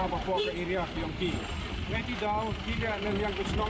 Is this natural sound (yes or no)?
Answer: yes